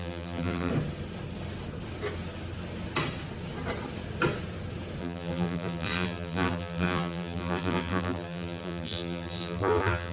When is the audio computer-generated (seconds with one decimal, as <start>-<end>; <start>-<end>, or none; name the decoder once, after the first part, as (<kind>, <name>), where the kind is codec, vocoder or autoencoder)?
0.0-0.7 (vocoder, BigVGAN v2); 5.0-10.1